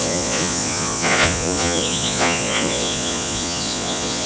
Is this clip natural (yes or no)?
no